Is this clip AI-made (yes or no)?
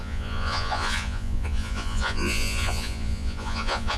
yes